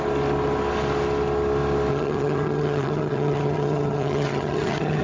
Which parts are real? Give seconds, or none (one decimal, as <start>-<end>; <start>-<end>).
0.0-1.9